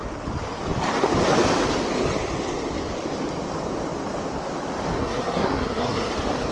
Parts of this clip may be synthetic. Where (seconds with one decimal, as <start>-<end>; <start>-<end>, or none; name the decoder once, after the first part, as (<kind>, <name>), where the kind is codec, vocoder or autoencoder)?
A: 5.0-6.1 (codec, SNAC)